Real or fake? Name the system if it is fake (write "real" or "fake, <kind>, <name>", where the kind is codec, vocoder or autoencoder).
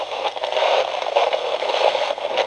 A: fake, codec, SNAC